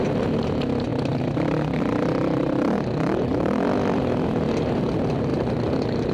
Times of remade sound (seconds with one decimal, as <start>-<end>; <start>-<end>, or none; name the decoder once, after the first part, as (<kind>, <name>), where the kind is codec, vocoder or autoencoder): 3.3-4.0 (vocoder, BigVGAN v2)